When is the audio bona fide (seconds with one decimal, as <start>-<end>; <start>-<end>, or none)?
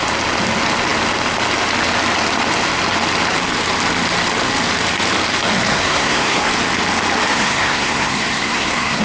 0.0-5.7; 6.5-7.3